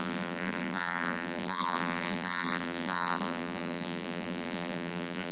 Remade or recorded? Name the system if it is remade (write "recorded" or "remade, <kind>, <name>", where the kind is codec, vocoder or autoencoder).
remade, vocoder, BigVGAN v2